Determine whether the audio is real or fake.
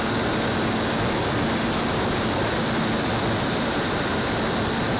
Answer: fake